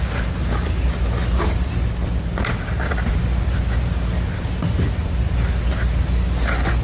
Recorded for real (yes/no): yes